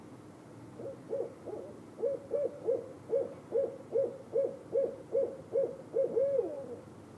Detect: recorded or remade recorded